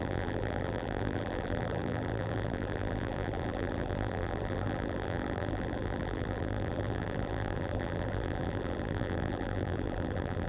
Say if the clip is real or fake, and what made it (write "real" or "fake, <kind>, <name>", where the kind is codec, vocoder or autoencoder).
fake, vocoder, BigVGAN v2